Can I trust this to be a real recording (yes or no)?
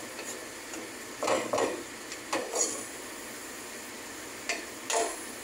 yes